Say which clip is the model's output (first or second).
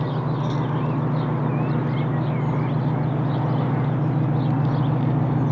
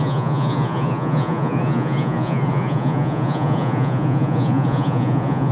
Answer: second